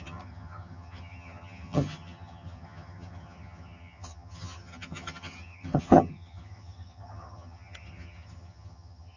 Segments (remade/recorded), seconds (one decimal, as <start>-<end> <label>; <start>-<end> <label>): 0.0-9.2 remade